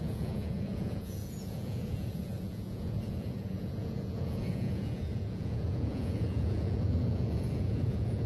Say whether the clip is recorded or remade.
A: remade